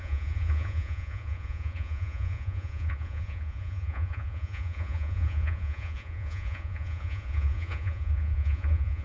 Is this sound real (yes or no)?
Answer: no